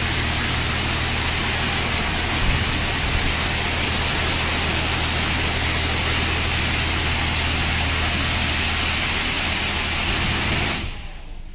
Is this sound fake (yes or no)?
no